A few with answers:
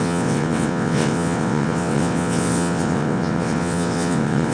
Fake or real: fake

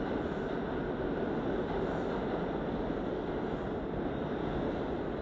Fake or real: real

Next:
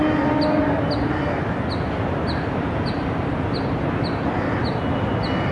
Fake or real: real